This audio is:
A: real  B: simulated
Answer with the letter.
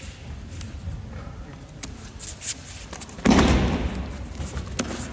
A